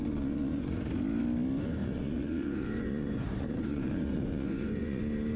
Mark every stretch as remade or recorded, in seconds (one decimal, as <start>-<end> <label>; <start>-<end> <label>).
0.0-0.8 remade; 0.8-1.8 recorded; 1.8-5.0 remade; 5.0-5.4 recorded